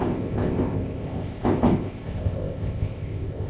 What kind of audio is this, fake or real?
fake